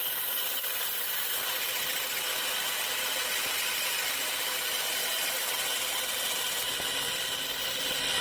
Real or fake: real